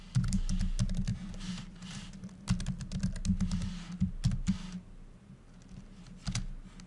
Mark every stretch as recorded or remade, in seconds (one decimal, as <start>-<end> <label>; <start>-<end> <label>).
0.0-1.1 recorded; 1.1-2.1 remade; 2.1-6.9 recorded